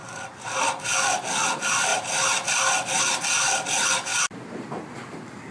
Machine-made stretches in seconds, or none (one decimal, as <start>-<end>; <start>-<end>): 0.0-0.7; 1.9-3.0